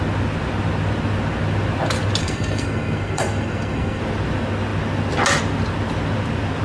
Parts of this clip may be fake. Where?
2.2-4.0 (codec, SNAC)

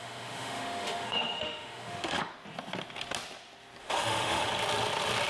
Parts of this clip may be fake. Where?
0.0-2.3 (autoencoder, DAC-VAE); 3.8-4.5

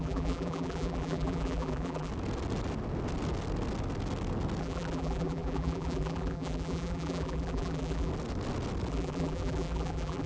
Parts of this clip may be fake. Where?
0.0-2.1 (vocoder, BigVGAN v2); 4.6-8.1; 8.9-10.3

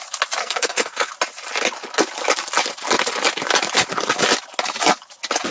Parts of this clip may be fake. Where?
0.4-1.1 (codec, SNAC)

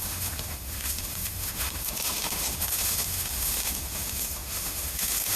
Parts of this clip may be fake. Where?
0.0-5.4 (autoencoder, DAC-VAE)